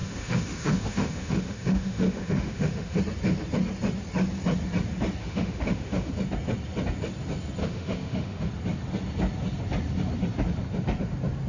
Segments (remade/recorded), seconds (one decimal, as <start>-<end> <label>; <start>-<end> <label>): 0.0-3.0 remade; 3.0-5.2 recorded; 5.2-6.1 remade; 6.1-7.6 recorded; 7.6-8.5 remade; 8.5-11.5 recorded